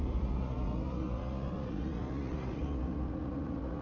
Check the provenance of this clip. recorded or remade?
remade